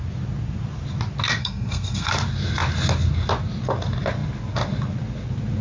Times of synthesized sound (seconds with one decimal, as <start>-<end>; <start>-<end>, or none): 1.4-2.1